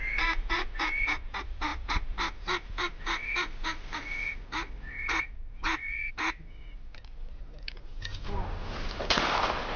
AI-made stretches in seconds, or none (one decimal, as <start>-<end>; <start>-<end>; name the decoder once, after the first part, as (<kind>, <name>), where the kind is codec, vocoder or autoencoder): none